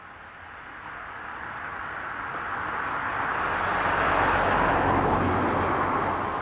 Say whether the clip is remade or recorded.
recorded